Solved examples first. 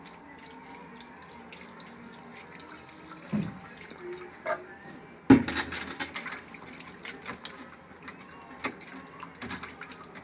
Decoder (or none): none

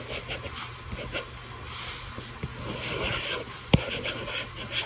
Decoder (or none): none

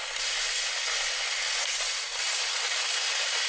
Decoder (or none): none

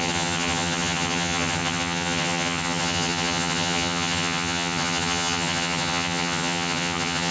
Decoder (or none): vocoder, HiFi-GAN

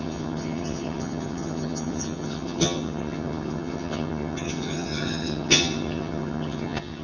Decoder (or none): vocoder, HiFi-GAN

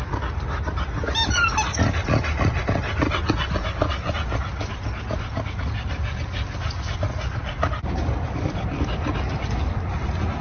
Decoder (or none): none